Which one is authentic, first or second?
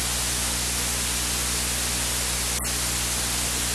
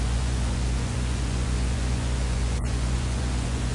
first